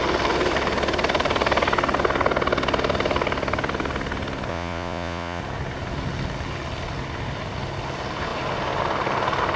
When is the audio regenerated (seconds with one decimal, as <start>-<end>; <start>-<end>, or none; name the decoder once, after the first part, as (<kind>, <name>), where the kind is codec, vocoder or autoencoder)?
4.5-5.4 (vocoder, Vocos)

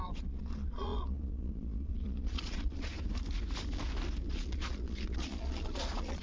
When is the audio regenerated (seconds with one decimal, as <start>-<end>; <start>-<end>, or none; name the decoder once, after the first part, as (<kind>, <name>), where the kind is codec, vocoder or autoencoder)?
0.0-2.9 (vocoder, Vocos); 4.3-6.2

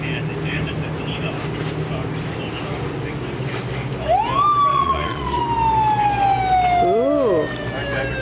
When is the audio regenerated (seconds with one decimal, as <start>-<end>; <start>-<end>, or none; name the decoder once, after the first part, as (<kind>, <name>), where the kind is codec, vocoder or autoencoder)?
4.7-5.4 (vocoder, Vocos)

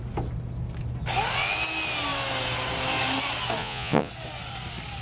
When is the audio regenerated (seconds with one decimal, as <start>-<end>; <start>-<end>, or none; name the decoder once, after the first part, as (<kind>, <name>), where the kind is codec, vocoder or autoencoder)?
3.6-4.1 (vocoder, Vocos)

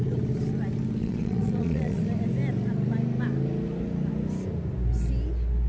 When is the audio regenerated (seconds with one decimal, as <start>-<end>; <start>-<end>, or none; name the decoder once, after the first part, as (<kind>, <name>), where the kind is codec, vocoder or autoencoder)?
1.0-2.0 (vocoder, Vocos)

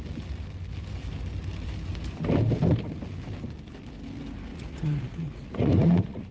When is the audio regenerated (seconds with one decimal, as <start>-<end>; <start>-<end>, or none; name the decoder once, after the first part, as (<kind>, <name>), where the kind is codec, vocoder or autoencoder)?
4.5-6.3 (vocoder, Vocos)

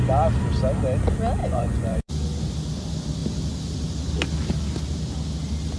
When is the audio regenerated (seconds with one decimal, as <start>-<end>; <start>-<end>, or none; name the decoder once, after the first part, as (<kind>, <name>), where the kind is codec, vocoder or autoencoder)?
1.4-2.1 (vocoder, Vocos)